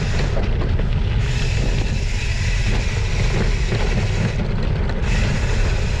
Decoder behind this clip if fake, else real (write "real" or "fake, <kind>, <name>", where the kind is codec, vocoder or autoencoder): real